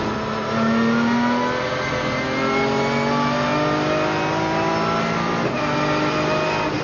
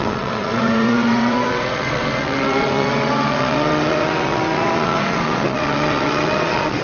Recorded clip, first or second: first